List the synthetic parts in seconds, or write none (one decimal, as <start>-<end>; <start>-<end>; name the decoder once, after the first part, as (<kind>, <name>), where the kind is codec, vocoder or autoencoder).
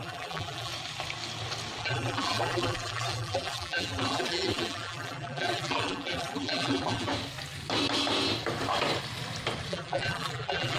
0.0-0.7 (vocoder, BigVGAN v2); 1.8-7.1; 9.7-10.8